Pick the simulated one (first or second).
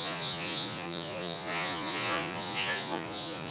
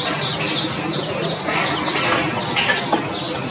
first